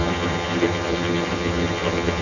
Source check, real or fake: fake